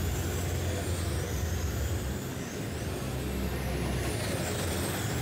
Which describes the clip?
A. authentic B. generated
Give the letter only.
A